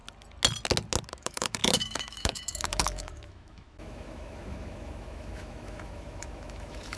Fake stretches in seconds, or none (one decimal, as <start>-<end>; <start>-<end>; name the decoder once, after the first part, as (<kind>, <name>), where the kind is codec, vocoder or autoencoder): 1.1-7.0 (autoencoder, DAC-VAE)